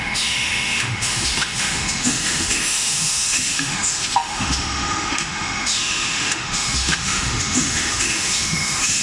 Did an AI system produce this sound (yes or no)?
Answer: yes